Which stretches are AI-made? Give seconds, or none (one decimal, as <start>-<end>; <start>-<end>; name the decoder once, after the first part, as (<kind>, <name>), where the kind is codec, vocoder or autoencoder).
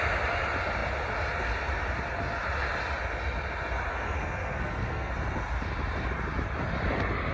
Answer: 3.9-5.1 (codec, SNAC)